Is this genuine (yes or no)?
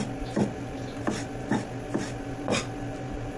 yes